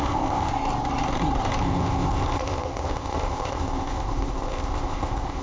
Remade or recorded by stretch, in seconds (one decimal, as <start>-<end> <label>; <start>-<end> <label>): 0.0-0.5 remade; 0.5-1.6 recorded; 1.6-5.4 remade